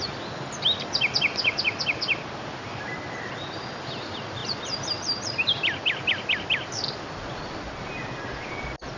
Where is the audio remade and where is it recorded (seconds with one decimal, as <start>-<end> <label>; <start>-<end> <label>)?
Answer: 0.0-9.0 recorded